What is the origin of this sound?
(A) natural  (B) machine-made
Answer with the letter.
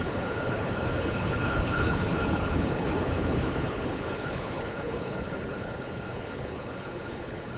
B